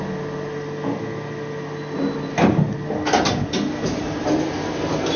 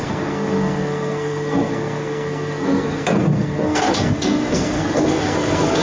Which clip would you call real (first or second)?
first